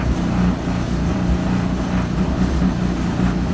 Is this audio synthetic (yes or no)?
no